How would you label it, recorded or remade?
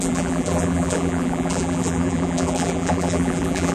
remade